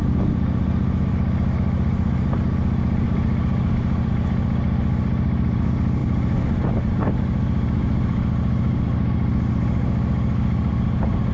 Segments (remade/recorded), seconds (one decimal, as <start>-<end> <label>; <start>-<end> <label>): 0.0-11.3 recorded